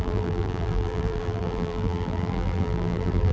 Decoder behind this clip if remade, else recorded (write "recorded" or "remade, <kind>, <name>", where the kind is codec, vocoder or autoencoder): remade, vocoder, BigVGAN v2